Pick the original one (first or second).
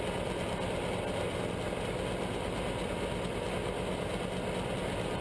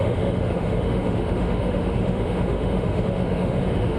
first